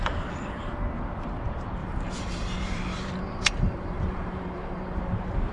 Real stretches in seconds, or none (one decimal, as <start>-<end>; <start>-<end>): 0.0-1.8; 5.1-5.5